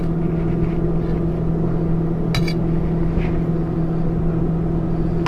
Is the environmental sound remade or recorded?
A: recorded